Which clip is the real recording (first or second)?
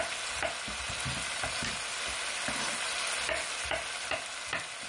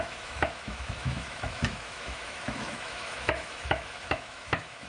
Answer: first